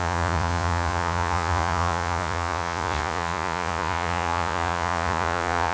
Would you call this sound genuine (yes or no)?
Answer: no